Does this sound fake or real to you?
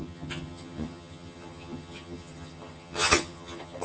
fake